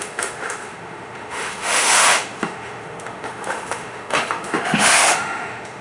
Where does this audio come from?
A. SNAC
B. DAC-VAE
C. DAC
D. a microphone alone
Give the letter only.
B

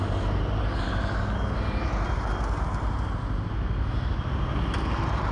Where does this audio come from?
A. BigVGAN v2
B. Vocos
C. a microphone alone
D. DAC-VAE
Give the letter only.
C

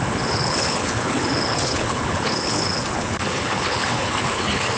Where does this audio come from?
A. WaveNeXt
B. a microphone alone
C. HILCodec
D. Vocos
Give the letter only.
C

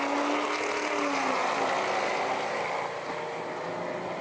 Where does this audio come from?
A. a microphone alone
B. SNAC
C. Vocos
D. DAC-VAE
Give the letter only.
A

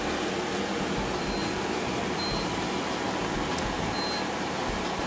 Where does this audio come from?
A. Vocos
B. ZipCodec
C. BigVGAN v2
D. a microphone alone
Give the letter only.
D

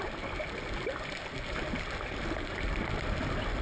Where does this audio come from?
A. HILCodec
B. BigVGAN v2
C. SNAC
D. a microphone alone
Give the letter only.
D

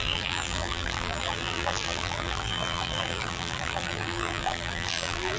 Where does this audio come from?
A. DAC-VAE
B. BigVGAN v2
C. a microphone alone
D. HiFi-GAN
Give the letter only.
B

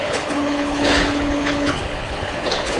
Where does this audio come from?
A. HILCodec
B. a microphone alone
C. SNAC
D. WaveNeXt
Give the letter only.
A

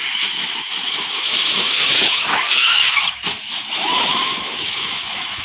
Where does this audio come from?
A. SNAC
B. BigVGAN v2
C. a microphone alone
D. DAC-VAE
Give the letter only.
D